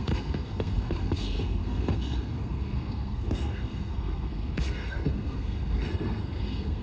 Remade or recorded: remade